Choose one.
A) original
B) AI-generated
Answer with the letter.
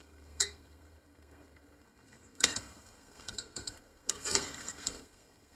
B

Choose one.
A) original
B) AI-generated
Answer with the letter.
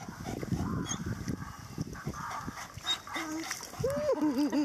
A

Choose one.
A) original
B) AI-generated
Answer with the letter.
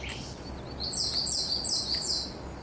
A